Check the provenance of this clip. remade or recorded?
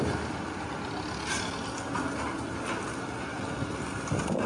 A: recorded